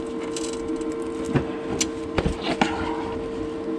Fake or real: real